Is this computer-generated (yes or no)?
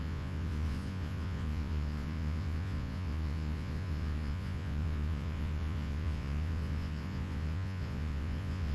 yes